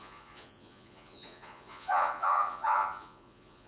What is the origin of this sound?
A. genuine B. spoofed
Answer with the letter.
B